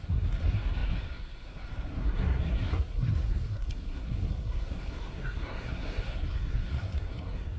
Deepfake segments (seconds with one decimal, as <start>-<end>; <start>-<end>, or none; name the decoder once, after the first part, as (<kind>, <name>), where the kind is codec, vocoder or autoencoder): 0.0-7.6 (codec, SNAC)